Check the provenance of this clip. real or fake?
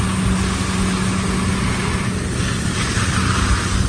real